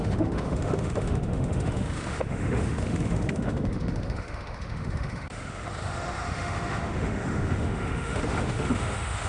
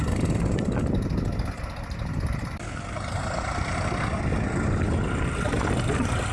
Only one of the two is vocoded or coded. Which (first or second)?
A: first